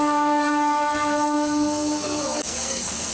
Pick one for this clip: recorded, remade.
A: remade